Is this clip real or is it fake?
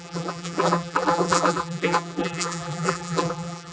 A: fake